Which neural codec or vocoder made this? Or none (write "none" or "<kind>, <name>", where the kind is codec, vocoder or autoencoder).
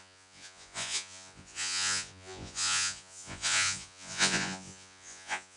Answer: vocoder, Vocos